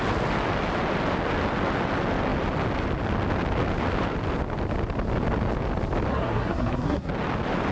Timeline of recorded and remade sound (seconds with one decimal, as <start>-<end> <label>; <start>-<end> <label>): 0.0-6.1 recorded; 6.1-7.1 remade; 7.1-7.7 recorded